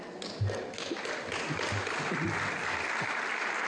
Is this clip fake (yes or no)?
no